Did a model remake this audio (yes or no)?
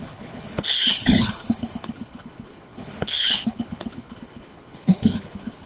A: yes